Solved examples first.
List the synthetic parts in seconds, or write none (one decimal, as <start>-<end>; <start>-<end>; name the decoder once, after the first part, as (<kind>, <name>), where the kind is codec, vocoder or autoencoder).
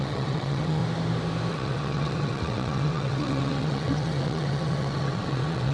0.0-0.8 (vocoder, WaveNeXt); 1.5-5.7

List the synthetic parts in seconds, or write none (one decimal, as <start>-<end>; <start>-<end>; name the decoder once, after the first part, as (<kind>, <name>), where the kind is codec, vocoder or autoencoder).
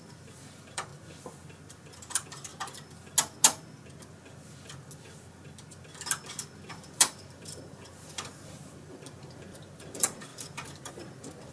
0.0-0.9 (vocoder, BigVGAN v2); 1.7-2.5; 6.7-11.5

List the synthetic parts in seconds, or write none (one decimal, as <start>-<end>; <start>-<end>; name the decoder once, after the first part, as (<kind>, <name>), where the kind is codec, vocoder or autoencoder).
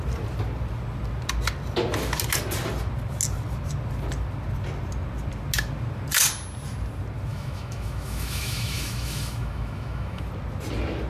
7.3-10.2 (autoencoder, DAC-VAE)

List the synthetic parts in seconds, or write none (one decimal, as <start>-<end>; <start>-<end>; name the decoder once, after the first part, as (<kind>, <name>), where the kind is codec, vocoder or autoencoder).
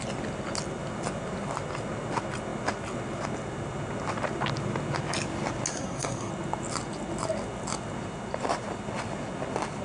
5.7-6.3 (codec, SNAC)